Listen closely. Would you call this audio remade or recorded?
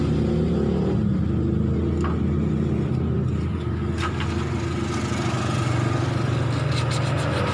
recorded